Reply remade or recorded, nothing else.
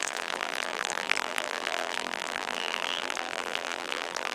remade